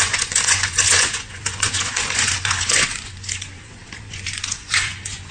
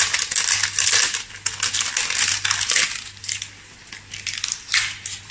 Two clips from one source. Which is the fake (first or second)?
first